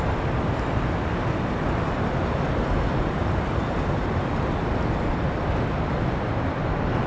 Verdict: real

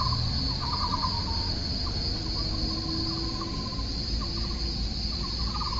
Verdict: real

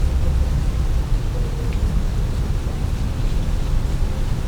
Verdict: real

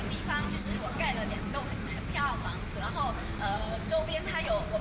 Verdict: real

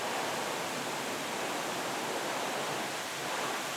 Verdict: fake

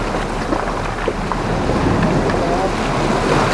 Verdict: real